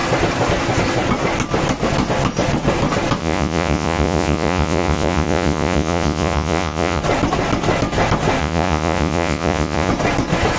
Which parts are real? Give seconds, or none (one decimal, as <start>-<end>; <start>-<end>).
0.0-3.2; 7.0-8.4; 9.9-10.6